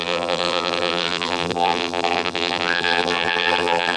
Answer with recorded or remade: remade